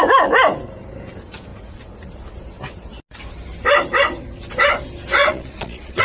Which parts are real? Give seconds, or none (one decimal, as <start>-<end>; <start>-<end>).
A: 0.0-5.2